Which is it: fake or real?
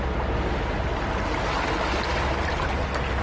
real